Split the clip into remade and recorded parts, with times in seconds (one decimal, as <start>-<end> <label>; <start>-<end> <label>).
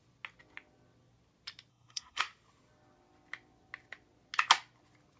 0.0-1.7 recorded; 1.7-2.2 remade; 2.2-5.2 recorded